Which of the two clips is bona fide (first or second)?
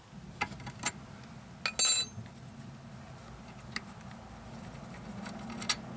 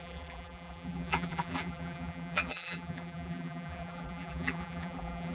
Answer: first